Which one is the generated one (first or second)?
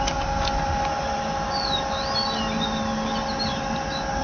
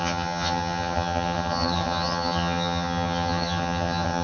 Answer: second